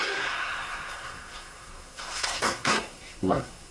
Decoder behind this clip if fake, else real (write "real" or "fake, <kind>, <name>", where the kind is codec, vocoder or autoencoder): fake, codec, SNAC